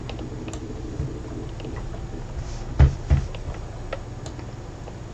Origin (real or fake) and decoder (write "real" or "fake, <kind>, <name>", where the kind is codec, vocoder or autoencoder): real